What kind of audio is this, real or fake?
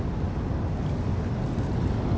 real